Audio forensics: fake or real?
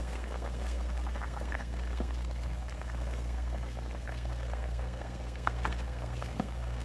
fake